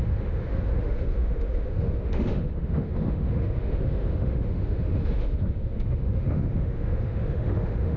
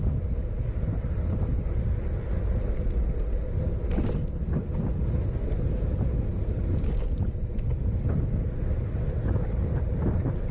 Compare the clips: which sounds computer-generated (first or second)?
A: first